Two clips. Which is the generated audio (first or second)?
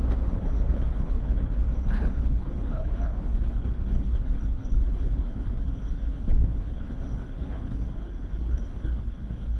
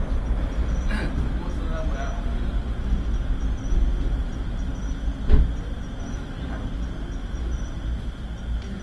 first